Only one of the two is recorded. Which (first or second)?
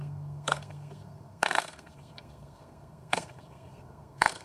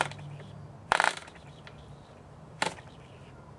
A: second